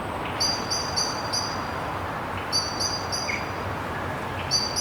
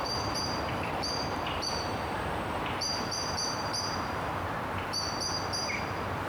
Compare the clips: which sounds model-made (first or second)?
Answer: second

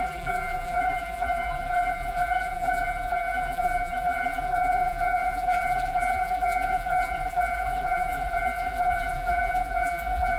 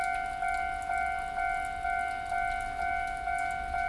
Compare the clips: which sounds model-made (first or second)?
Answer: first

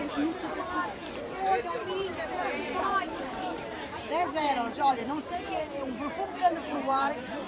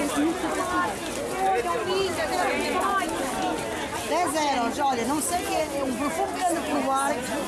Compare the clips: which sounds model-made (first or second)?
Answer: first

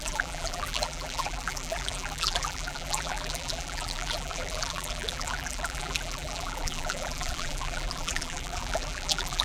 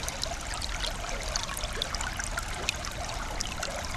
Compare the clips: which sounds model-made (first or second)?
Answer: first